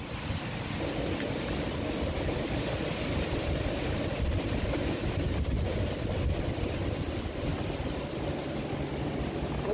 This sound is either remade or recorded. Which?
recorded